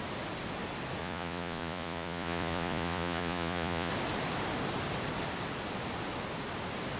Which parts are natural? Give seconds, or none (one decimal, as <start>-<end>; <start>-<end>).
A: 0.0-1.0; 3.9-7.0